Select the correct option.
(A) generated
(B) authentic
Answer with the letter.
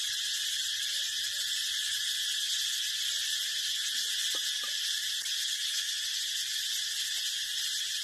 B